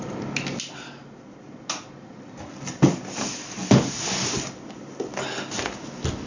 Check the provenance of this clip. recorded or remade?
recorded